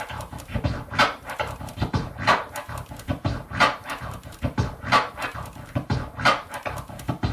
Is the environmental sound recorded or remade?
remade